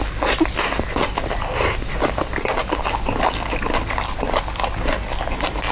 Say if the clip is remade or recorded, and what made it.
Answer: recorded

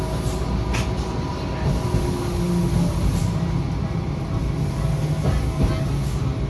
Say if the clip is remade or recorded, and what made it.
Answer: recorded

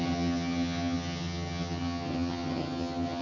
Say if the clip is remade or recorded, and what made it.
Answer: remade, vocoder, HiFi-GAN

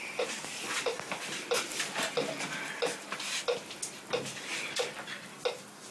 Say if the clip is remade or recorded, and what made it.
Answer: recorded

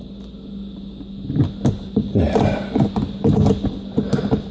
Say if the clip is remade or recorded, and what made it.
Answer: recorded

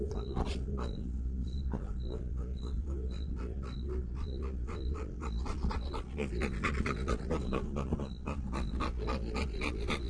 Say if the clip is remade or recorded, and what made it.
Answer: remade, vocoder, Vocos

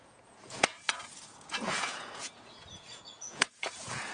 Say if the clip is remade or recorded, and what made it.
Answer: remade, vocoder, Vocos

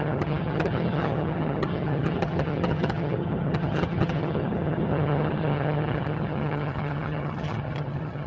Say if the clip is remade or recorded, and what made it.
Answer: remade, vocoder, HiFi-GAN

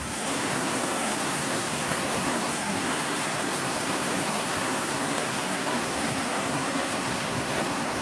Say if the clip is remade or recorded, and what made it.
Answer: remade, codec, SNAC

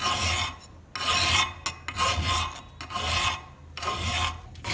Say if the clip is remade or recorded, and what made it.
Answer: recorded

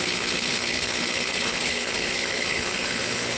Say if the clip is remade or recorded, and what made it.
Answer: remade, codec, HILCodec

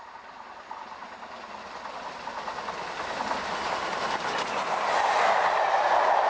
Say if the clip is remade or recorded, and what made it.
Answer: recorded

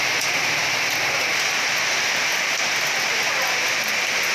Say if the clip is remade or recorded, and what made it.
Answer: recorded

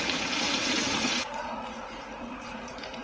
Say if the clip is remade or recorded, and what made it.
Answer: remade, vocoder, Vocos